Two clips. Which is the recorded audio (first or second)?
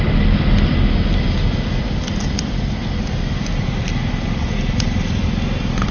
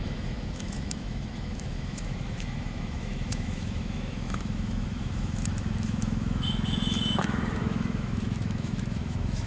first